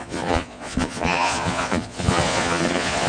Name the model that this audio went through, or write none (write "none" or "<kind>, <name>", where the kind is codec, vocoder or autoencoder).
vocoder, Vocos